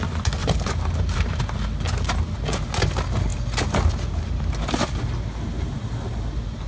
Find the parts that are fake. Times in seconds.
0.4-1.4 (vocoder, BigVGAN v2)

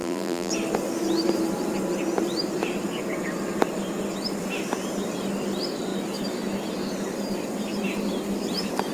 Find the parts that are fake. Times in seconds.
0.0-0.5 (vocoder, BigVGAN v2)

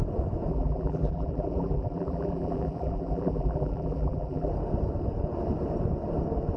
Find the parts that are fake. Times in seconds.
0.5-4.5 (vocoder, BigVGAN v2)